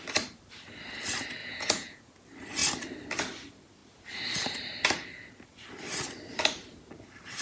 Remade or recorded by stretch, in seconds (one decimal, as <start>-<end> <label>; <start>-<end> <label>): 0.0-1.4 recorded; 1.4-2.1 remade; 2.1-7.4 recorded